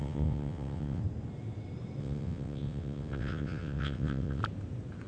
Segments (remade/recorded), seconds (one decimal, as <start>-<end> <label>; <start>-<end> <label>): 0.0-1.0 remade; 1.0-2.0 recorded; 2.0-4.4 remade; 4.4-5.1 recorded